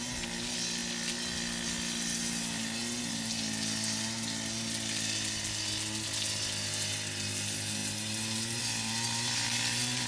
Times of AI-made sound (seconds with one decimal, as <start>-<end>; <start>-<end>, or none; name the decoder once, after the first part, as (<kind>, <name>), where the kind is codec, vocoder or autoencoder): none